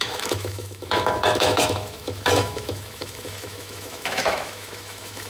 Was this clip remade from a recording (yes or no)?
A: yes